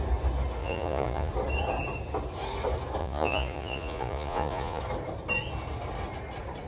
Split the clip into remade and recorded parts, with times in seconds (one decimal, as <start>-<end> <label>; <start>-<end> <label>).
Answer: 0.0-0.6 recorded; 0.6-1.3 remade; 1.3-3.0 recorded; 3.0-4.8 remade; 4.8-6.7 recorded